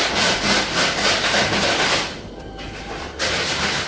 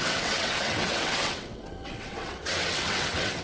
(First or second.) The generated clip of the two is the second